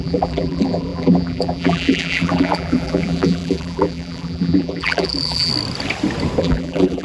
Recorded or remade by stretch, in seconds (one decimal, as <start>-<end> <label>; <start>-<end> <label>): 0.0-5.5 remade; 5.5-6.4 recorded; 6.4-7.0 remade

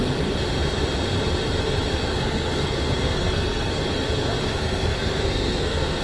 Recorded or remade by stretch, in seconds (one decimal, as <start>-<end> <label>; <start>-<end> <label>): 0.0-2.0 recorded; 2.0-3.8 remade; 3.8-4.4 recorded; 4.4-6.0 remade